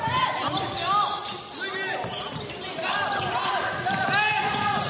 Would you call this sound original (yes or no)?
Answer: yes